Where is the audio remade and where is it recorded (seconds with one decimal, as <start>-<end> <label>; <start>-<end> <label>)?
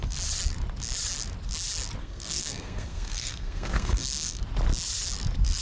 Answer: 0.0-2.0 recorded; 2.0-4.4 remade; 4.4-5.6 recorded